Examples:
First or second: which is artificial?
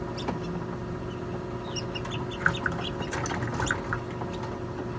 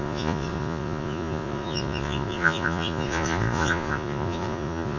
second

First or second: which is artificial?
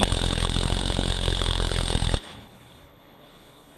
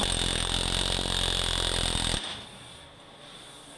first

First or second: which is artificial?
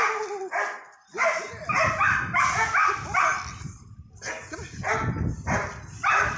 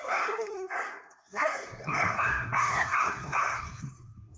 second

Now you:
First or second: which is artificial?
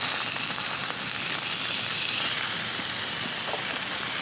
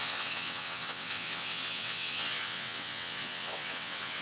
second